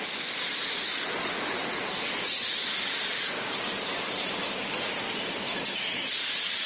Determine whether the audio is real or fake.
fake